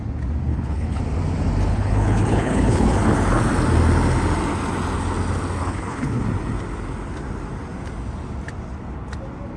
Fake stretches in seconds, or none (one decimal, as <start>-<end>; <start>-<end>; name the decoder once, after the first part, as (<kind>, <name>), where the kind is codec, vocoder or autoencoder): 0.5-1.0 (codec, HILCodec); 1.7-2.9; 5.6-6.2